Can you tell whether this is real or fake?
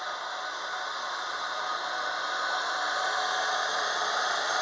real